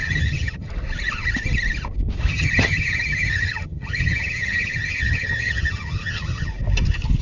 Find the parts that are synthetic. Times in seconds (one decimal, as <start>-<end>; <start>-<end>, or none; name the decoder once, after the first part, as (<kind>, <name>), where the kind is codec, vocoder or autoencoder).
0.0-0.7 (vocoder, HiFi-GAN); 2.3-6.5

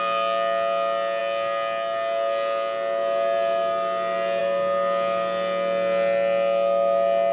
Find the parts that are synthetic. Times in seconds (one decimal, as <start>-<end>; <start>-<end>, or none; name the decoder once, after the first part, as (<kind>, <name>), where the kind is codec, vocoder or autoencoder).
none

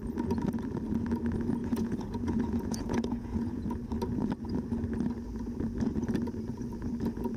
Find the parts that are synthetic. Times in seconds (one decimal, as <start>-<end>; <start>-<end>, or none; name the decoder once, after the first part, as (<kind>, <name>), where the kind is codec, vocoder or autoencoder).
1.6-3.7 (vocoder, Vocos)

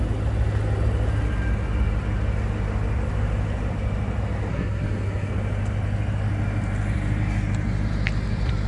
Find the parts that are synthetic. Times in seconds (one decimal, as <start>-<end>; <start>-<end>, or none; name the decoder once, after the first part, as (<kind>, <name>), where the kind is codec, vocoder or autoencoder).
4.5-5.3 (codec, SNAC)

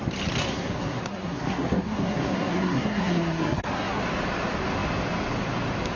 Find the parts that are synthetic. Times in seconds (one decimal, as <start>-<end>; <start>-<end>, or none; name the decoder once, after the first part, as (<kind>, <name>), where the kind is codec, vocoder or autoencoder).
0.4-4.0 (codec, SNAC)